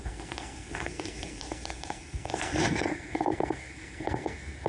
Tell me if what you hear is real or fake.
fake